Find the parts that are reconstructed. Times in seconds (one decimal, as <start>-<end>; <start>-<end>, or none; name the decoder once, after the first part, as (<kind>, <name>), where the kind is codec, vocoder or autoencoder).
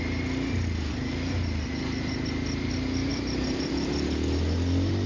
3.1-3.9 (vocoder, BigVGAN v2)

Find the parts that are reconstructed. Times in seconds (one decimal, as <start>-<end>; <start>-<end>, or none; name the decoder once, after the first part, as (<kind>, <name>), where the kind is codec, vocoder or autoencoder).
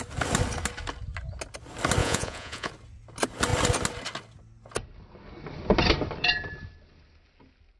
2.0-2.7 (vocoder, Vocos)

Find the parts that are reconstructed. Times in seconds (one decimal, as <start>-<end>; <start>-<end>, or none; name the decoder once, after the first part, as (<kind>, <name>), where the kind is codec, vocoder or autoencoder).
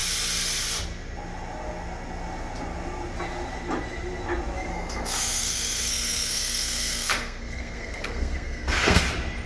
4.7-9.0 (codec, SNAC)